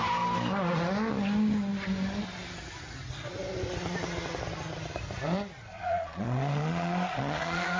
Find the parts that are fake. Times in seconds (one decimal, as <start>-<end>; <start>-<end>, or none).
5.7-7.8